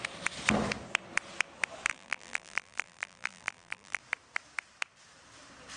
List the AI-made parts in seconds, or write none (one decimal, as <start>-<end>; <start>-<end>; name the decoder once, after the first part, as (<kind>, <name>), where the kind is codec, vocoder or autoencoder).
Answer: 1.9-4.0 (vocoder, BigVGAN v2)